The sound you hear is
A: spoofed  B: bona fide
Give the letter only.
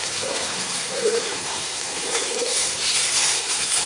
A